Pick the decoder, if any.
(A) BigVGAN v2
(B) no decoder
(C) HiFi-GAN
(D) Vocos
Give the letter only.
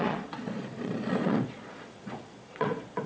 D